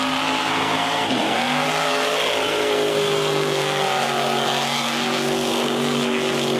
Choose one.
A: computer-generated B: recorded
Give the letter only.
A